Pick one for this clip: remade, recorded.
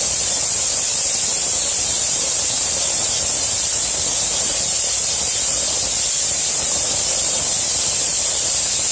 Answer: remade